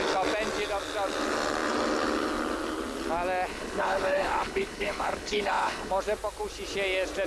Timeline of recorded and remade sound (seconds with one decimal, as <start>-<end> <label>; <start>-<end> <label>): 0.0-3.5 recorded; 3.5-5.9 remade; 5.9-7.3 recorded